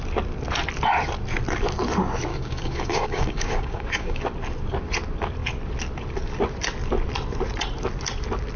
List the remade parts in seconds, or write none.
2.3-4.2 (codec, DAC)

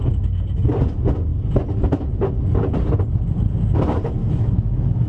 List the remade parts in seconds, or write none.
4.2-5.1 (autoencoder, DAC-VAE)

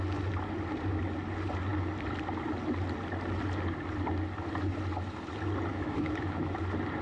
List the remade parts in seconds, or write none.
5.7-6.6 (autoencoder, DAC-VAE)

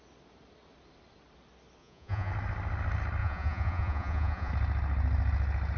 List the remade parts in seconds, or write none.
1.8-2.3 (vocoder, Vocos); 3.2-4.5

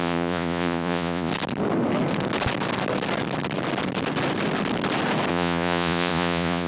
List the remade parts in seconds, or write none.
0.0-1.3 (vocoder, Vocos); 5.3-6.7